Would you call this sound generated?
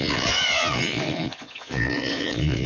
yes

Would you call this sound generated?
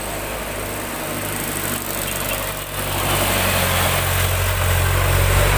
no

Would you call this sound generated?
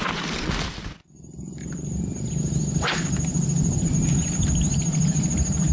no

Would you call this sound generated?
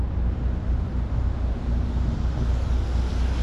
no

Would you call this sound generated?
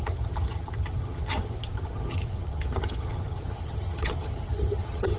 yes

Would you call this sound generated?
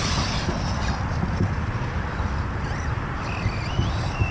yes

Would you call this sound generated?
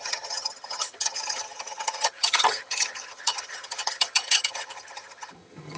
yes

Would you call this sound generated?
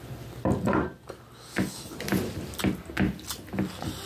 no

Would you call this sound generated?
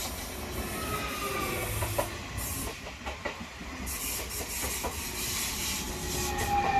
no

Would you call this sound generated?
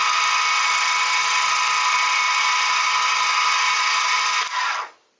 no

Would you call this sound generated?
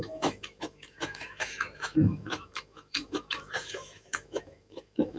yes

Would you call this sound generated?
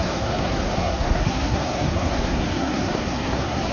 yes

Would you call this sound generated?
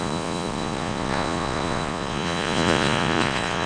yes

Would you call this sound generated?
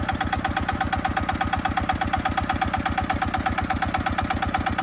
no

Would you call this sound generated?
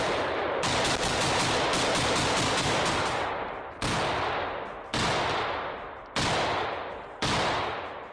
no